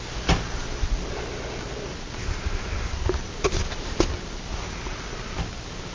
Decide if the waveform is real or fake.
real